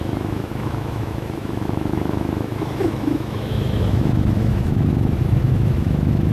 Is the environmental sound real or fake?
fake